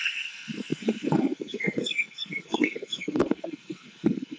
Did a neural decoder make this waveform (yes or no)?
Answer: yes